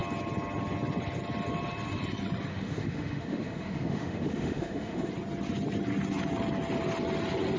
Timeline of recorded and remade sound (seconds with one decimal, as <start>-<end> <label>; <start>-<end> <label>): 0.0-2.5 recorded; 2.5-5.1 remade; 5.1-7.6 recorded